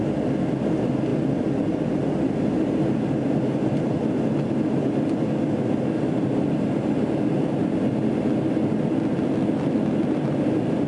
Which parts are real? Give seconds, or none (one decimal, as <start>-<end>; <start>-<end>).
0.0-10.9